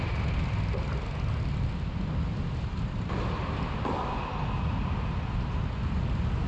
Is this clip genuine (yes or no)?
yes